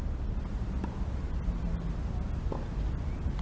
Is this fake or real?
real